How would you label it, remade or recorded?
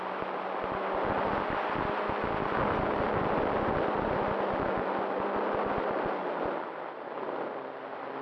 recorded